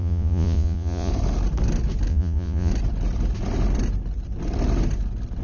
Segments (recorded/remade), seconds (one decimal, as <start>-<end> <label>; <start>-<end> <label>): 0.0-1.1 remade; 1.1-2.1 recorded; 2.1-2.7 remade; 2.7-5.4 recorded